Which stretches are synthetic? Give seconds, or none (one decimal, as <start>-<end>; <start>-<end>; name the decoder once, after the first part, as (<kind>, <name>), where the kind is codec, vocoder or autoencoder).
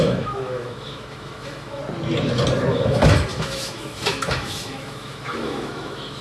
0.0-1.8 (autoencoder, DAC-VAE); 2.7-6.2